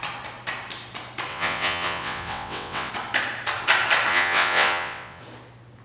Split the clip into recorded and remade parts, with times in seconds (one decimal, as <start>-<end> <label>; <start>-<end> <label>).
0.0-1.3 recorded; 1.3-2.9 remade; 2.9-4.1 recorded; 4.1-5.2 remade; 5.2-5.8 recorded